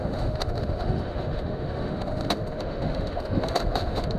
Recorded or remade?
remade